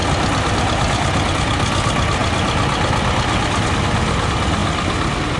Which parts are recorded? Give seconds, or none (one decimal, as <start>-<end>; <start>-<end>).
0.0-5.4